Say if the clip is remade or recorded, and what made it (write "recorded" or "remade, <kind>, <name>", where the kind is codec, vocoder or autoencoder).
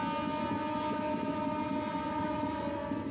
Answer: recorded